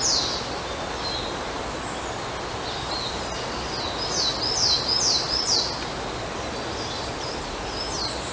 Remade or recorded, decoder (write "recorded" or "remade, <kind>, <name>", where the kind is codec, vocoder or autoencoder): recorded